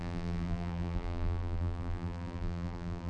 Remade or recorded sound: remade